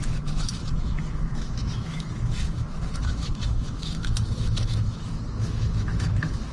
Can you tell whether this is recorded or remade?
remade